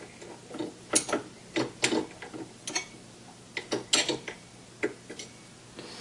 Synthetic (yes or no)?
no